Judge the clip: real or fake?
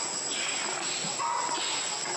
real